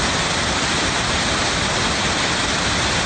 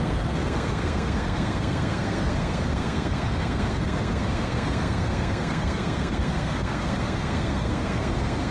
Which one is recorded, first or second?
first